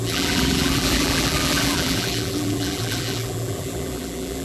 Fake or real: fake